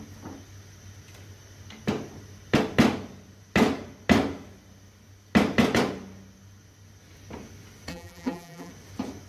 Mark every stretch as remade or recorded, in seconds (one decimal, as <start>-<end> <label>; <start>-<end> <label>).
0.0-7.9 recorded; 7.9-8.7 remade; 8.7-9.3 recorded